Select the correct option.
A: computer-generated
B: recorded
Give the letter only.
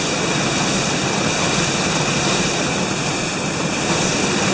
B